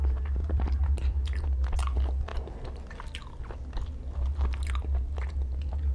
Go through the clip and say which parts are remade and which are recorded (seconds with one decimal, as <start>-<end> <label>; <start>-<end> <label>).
0.0-0.4 recorded; 0.4-1.1 remade; 1.1-5.9 recorded